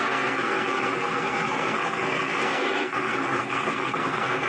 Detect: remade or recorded remade